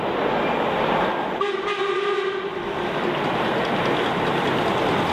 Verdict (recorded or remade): recorded